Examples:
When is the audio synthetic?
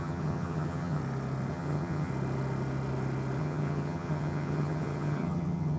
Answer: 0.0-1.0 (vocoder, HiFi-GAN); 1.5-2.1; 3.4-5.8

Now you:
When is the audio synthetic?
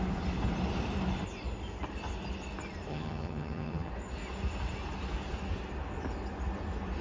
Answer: 2.9-3.9 (vocoder, HiFi-GAN)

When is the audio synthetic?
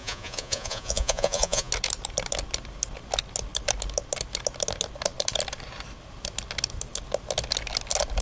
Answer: 0.0-1.7 (vocoder, Vocos)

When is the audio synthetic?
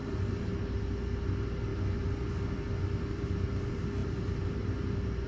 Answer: 0.0-0.8 (vocoder, BigVGAN v2); 4.0-5.3